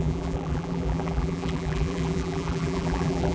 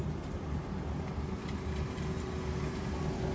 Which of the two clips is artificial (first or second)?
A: first